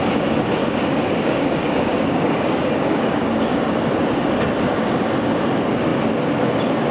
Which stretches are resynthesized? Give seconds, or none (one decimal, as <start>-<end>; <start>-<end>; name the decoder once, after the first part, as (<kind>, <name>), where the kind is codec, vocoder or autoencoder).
0.6-3.6 (codec, DAC)